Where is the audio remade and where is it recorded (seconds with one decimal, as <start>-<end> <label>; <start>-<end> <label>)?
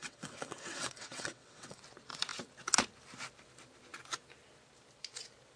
0.0-1.8 remade; 1.8-5.6 recorded